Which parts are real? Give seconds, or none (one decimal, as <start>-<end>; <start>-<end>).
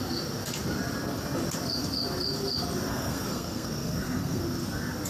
0.0-2.9; 4.4-5.1